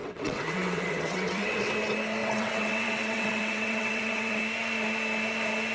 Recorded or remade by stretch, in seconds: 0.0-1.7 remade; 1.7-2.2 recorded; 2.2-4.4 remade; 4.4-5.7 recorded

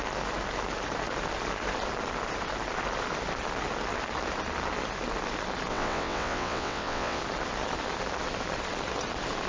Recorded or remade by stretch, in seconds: 0.0-5.7 recorded; 5.7-7.2 remade; 7.2-9.5 recorded

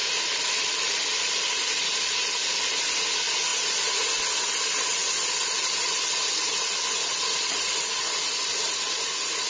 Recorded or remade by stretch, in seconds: 0.0-9.5 recorded